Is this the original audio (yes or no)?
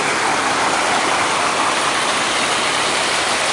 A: yes